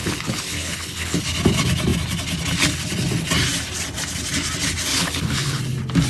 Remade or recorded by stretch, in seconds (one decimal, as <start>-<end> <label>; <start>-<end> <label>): 0.0-1.2 remade; 1.2-4.9 recorded; 4.9-5.6 remade; 5.6-6.1 recorded